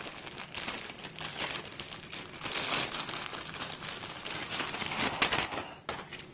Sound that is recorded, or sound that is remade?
recorded